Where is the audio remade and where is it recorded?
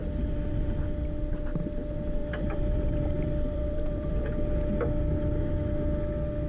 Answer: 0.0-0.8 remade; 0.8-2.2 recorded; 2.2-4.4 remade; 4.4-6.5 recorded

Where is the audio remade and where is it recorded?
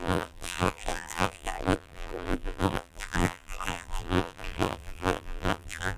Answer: 0.0-6.0 remade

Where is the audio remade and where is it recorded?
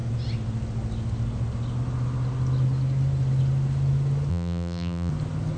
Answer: 0.0-4.3 recorded; 4.3-5.1 remade; 5.1-5.6 recorded